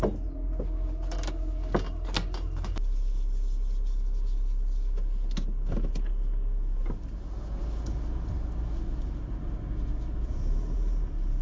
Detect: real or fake real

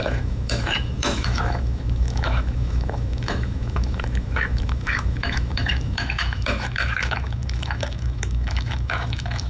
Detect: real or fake fake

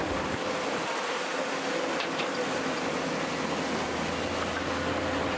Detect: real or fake real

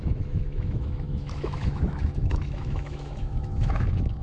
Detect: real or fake fake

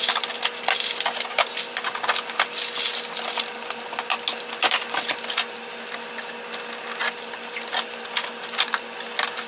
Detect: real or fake real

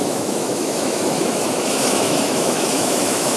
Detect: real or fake fake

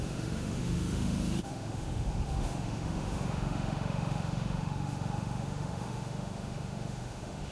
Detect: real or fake fake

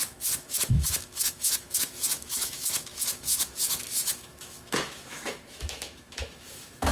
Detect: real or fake fake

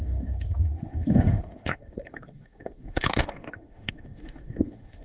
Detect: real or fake fake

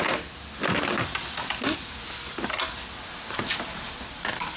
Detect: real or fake real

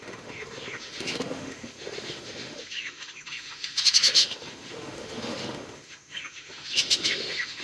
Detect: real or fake fake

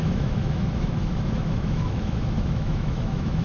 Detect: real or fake fake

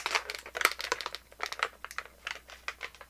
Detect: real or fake real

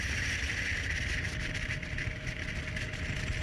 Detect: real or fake real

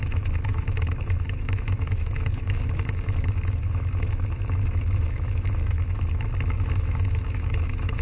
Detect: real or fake fake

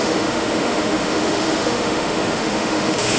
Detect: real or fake fake